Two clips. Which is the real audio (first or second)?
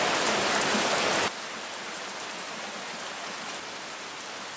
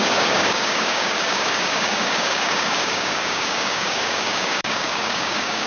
first